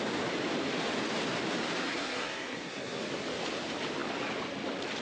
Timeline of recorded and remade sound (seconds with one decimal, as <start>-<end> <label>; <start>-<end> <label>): 0.0-1.8 recorded; 1.8-3.0 remade; 3.0-5.0 recorded